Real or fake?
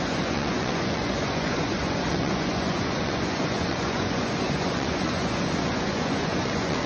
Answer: fake